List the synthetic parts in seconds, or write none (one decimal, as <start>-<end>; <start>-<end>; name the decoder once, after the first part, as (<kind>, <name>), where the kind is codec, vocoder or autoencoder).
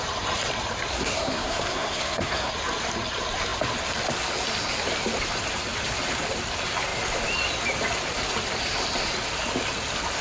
0.9-2.5 (codec, SNAC)